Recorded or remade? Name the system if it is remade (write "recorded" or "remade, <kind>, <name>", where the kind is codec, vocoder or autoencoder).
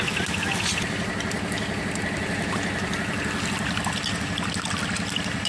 recorded